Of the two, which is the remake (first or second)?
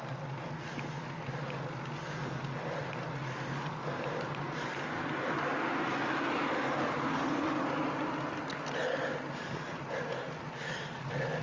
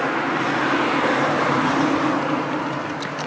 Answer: second